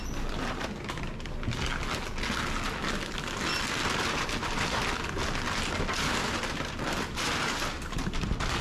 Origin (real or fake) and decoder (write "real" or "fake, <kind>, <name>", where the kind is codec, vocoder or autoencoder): real